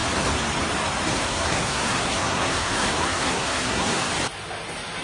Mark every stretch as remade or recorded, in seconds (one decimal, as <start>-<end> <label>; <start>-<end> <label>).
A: 0.0-1.1 recorded; 1.1-4.1 remade; 4.1-5.0 recorded